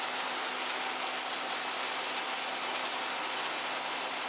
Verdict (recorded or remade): recorded